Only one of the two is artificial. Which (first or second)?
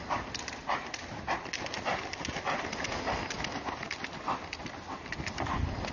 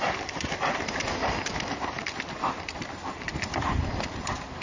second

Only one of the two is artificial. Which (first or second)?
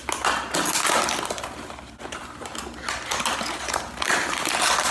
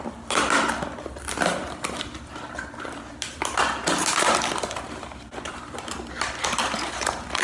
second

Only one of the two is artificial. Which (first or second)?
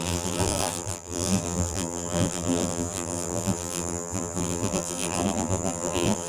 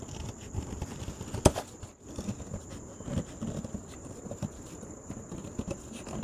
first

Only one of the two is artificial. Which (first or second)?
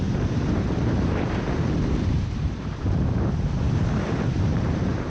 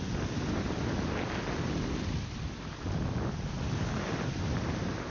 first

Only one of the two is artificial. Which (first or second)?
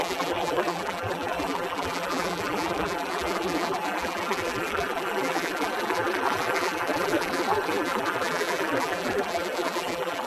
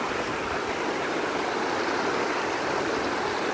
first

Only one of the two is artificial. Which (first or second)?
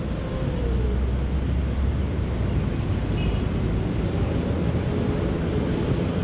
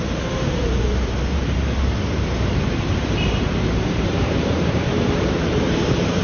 second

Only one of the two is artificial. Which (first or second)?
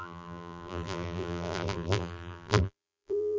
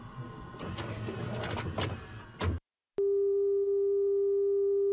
first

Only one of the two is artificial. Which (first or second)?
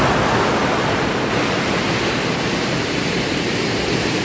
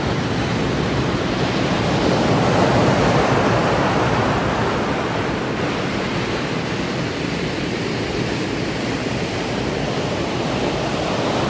second